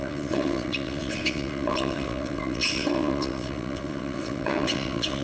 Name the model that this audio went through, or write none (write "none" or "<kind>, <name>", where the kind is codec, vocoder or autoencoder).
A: vocoder, WaveNeXt